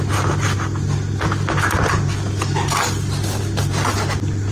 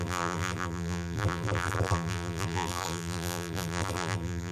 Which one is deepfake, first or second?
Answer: second